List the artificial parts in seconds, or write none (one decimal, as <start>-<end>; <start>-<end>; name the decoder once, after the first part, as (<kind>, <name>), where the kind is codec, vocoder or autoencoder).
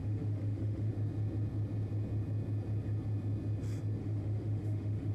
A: 0.0-0.9 (autoencoder, DAC-VAE); 4.0-5.1